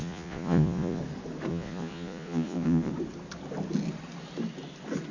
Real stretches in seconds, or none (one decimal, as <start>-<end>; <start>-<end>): 1.0-1.5; 2.9-5.1